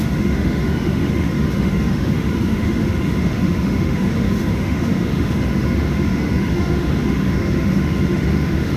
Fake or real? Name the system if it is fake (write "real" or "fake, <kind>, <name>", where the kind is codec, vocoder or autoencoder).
fake, autoencoder, DAC-VAE